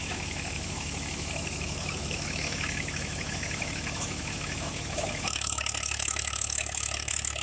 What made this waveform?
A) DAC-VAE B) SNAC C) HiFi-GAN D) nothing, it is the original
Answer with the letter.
A